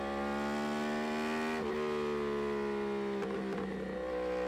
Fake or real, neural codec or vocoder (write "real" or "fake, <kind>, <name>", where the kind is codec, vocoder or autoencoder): real